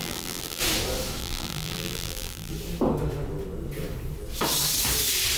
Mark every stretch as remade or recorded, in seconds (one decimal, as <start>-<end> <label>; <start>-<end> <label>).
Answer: 0.0-0.6 remade; 0.6-1.2 recorded; 1.2-2.5 remade; 2.5-5.4 recorded